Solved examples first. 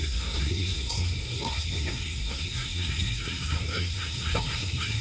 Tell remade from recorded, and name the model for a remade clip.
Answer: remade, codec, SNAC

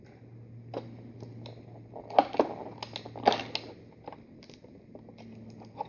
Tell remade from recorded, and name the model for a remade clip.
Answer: recorded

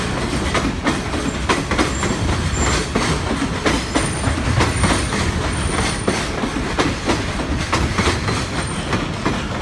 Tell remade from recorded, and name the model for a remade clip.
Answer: recorded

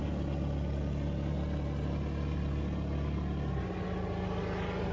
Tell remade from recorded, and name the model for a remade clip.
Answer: recorded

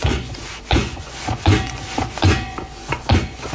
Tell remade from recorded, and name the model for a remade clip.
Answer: remade, vocoder, Vocos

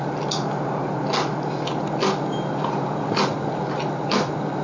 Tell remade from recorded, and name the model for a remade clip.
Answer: recorded